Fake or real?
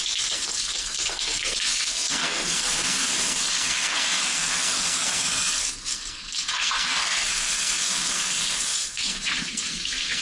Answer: fake